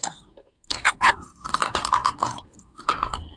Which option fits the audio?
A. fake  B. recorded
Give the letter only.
A